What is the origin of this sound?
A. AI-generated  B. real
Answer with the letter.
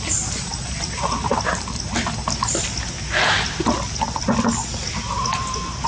B